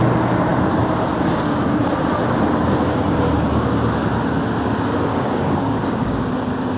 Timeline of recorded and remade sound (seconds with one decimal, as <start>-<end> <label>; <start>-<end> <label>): 0.0-5.1 recorded; 5.1-6.2 remade; 6.2-6.8 recorded